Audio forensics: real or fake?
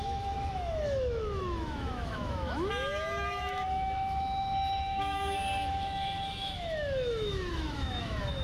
fake